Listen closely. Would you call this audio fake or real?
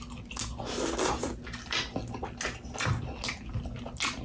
real